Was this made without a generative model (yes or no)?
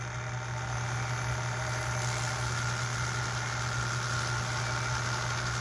yes